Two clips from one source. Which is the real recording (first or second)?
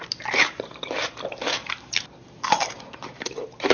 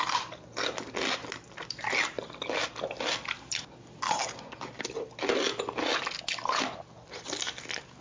second